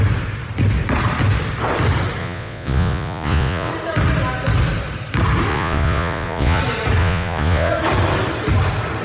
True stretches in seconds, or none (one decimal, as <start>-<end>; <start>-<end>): 0.0-2.2; 3.7-5.5; 6.6-7.0; 7.7-9.0